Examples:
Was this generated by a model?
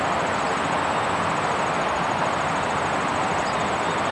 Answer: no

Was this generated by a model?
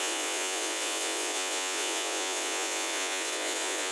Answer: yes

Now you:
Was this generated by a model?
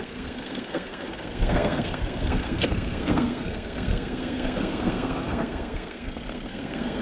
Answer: yes